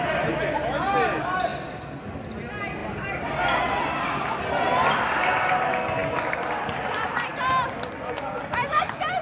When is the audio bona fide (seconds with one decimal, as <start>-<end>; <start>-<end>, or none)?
0.0-9.2